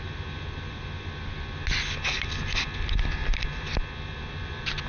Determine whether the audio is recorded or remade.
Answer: recorded